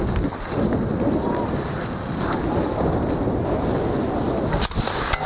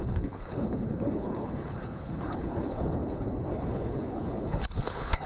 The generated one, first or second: second